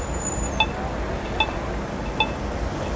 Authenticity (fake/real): real